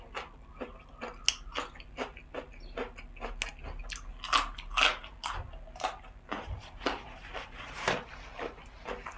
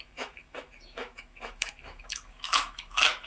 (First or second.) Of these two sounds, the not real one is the second